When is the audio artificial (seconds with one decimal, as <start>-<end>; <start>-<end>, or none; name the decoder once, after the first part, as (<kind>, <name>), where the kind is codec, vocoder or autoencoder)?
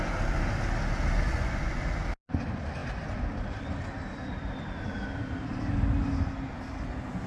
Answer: 1.3-1.8 (vocoder, Vocos)